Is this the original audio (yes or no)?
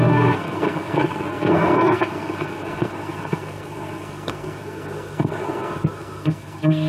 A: no